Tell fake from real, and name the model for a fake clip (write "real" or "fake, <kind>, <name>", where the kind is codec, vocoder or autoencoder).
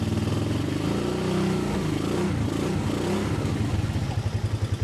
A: real